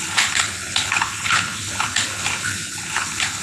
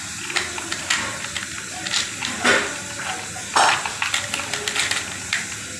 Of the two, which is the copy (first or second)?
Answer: first